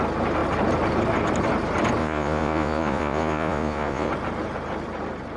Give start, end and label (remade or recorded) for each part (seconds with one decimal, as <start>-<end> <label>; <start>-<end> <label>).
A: 0.0-2.0 recorded; 2.0-4.1 remade; 4.1-5.4 recorded